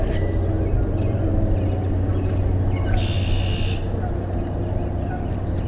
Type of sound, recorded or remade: remade